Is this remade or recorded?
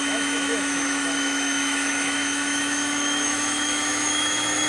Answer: remade